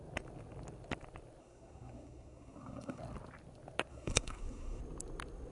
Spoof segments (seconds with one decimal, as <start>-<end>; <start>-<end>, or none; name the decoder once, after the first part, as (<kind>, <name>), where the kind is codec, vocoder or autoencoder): 1.4-3.0 (codec, SNAC); 3.9-4.8